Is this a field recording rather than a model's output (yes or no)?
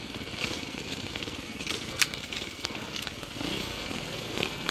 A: no